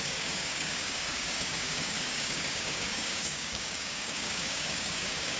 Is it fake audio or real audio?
fake